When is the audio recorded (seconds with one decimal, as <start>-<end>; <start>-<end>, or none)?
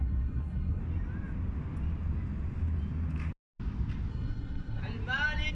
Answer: 0.8-4.1; 4.8-5.5